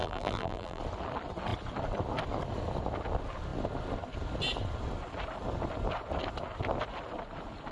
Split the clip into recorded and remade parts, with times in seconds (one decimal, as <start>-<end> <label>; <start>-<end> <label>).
0.0-0.8 remade; 0.8-7.7 recorded